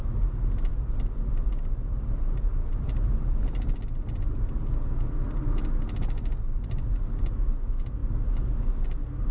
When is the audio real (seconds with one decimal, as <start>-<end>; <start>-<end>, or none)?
0.0-9.3